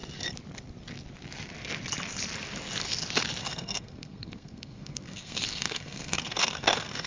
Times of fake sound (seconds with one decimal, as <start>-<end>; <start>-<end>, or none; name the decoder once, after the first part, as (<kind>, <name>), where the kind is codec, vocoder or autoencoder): 3.4-7.1 (codec, SNAC)